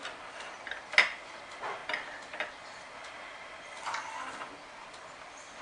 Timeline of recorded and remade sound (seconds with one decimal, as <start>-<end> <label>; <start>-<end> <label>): 0.0-5.6 recorded